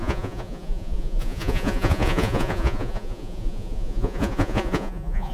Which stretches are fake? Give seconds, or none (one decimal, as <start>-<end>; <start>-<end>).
0.0-5.3